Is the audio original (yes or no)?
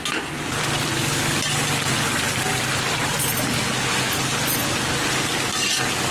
yes